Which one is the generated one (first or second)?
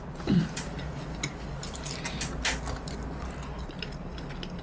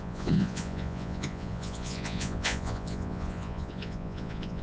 second